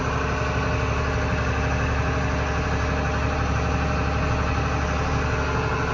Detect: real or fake real